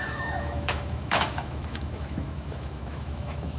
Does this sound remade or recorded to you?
remade